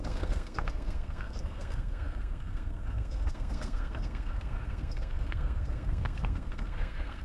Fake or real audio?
fake